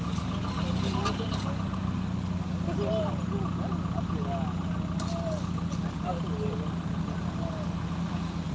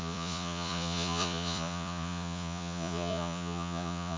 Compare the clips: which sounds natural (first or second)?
first